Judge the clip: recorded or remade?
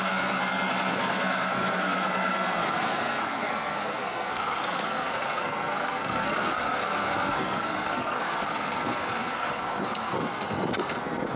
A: remade